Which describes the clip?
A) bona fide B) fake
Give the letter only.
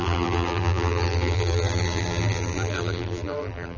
B